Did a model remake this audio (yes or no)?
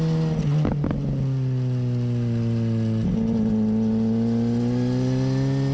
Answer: no